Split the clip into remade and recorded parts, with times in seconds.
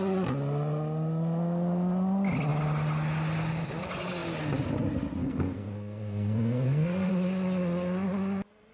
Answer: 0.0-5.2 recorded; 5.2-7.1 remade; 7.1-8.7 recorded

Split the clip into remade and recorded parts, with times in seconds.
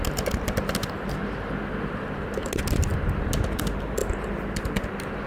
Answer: 0.0-5.3 recorded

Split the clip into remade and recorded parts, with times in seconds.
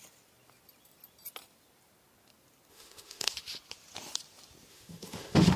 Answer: 0.0-2.7 recorded; 2.7-3.3 remade; 3.3-4.7 recorded; 4.7-5.6 remade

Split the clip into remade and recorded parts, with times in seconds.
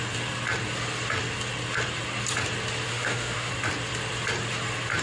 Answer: 0.0-2.9 recorded; 2.9-3.5 remade; 3.5-5.0 recorded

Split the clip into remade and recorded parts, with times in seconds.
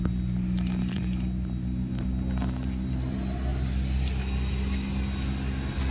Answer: 0.0-5.9 recorded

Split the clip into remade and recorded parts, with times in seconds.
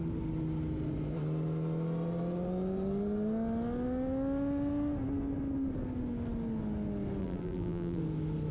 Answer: 0.0-7.2 recorded; 7.2-8.0 remade; 8.0-8.5 recorded